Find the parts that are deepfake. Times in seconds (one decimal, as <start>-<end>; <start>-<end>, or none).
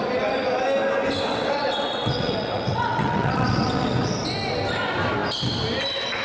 1.3-4.2